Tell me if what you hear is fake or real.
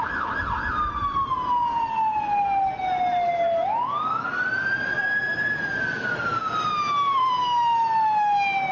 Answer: real